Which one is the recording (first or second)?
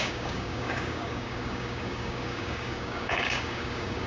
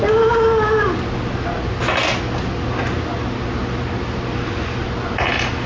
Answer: second